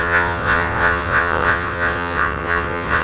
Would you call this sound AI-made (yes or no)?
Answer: yes